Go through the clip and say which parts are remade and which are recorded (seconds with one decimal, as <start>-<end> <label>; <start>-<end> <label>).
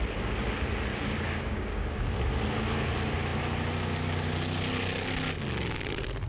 0.0-0.9 recorded; 0.9-2.2 remade; 2.2-6.3 recorded